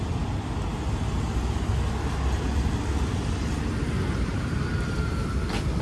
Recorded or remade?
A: recorded